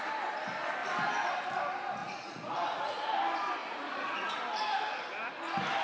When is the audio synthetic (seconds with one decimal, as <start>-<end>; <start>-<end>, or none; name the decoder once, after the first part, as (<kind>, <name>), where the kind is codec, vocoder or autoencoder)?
2.0-3.1 (vocoder, Vocos); 3.6-4.4